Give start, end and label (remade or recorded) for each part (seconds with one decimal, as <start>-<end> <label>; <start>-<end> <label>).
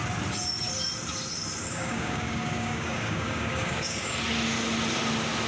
0.0-1.7 recorded; 1.7-4.1 remade; 4.1-5.5 recorded